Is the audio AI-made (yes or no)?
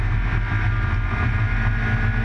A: no